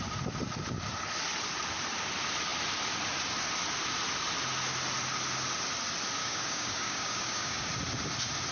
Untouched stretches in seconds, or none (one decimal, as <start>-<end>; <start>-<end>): 0.0-6.2; 7.7-8.5